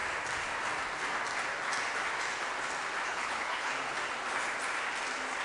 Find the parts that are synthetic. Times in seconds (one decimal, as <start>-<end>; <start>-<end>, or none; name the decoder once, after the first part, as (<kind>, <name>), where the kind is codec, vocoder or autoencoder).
3.1-3.7 (codec, HILCodec)